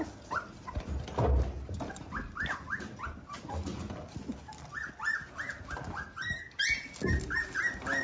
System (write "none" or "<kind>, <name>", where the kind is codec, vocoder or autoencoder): none